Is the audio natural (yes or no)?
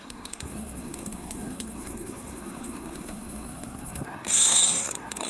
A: no